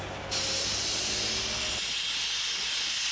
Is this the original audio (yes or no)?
yes